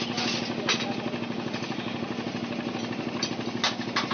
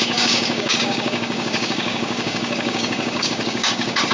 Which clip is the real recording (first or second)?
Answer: first